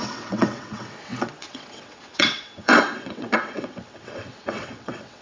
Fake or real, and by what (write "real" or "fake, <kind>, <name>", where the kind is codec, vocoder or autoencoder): fake, vocoder, WaveNeXt